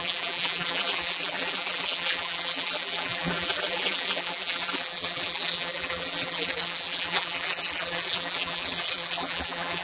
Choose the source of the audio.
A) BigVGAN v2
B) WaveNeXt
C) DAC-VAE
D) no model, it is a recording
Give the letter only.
A